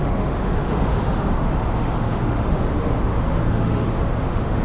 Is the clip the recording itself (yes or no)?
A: no